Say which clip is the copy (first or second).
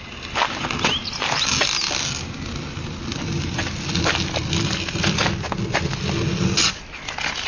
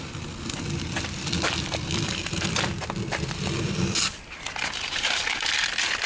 second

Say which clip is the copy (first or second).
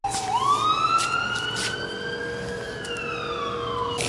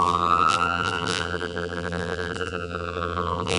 second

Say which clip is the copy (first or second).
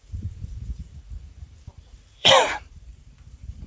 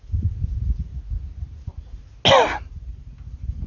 first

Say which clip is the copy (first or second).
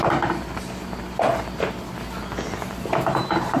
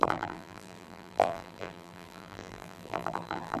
second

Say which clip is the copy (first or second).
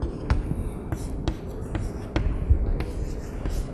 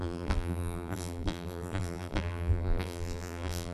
second